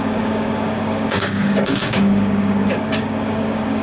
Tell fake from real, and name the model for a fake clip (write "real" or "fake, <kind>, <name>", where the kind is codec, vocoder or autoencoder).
fake, codec, DAC